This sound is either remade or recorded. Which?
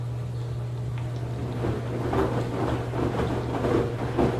recorded